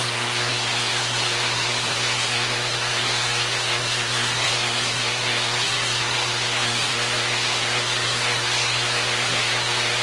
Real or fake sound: fake